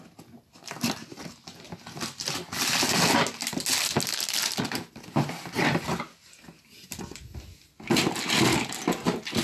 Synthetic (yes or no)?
no